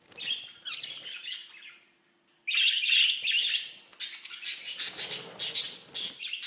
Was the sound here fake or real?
real